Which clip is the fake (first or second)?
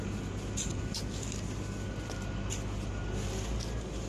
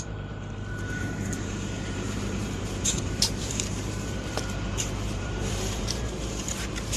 second